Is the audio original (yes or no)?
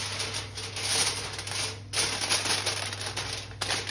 yes